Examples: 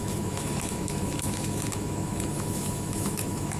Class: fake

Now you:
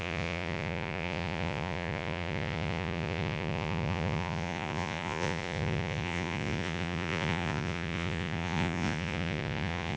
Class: fake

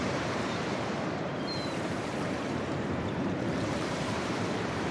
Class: fake